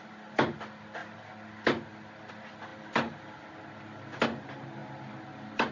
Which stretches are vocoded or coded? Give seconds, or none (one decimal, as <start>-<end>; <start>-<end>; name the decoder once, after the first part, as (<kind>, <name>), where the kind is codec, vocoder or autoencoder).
none